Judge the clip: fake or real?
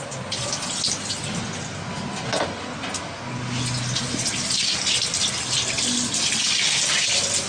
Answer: real